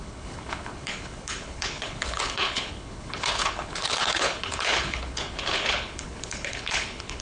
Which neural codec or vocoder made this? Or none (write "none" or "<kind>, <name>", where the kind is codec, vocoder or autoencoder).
codec, HILCodec